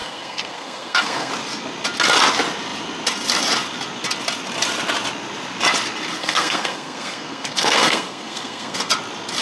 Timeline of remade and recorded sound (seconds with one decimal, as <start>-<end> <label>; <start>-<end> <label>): 0.0-1.3 remade; 1.3-6.2 recorded; 6.2-8.9 remade; 8.9-9.4 recorded